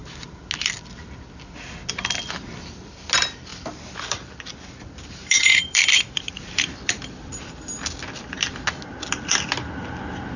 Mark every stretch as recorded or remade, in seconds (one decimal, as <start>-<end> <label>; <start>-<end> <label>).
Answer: 0.0-3.5 recorded; 3.5-8.7 remade; 8.7-10.4 recorded